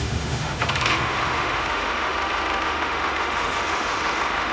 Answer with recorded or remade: remade